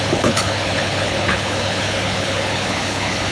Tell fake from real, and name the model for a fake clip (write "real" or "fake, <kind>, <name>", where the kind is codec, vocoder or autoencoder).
fake, codec, HILCodec